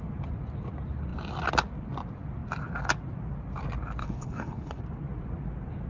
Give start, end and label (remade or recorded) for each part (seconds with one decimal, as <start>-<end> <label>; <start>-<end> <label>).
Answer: 0.0-4.0 recorded; 4.0-4.8 remade; 4.8-5.9 recorded